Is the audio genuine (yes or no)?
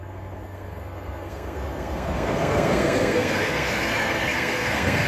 no